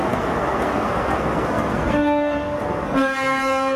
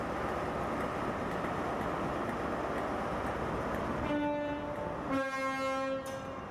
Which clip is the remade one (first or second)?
first